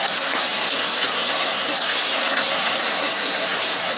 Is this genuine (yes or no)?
no